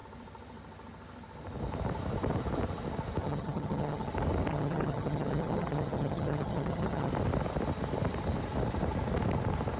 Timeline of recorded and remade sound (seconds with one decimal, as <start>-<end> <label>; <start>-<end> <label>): 0.0-3.2 recorded; 3.2-4.1 remade; 4.1-4.5 recorded; 4.5-7.1 remade; 7.1-9.8 recorded